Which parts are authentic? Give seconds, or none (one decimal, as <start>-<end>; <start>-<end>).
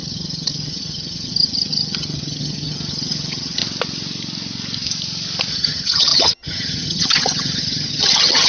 3.6-5.5